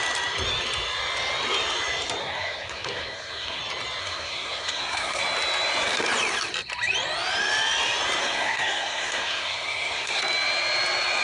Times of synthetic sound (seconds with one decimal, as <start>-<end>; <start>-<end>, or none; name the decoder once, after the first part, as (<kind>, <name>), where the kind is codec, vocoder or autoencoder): 2.2-3.6 (codec, SNAC); 4.0-5.2; 8.2-10.2